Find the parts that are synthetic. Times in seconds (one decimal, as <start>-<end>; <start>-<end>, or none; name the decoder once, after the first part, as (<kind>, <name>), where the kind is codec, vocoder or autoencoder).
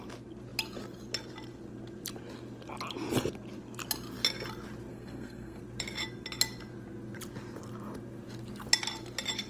4.9-5.6 (codec, SNAC)